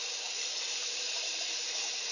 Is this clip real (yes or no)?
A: no